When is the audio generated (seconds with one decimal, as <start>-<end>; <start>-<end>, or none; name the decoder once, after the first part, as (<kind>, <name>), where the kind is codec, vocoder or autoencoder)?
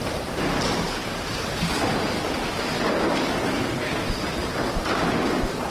none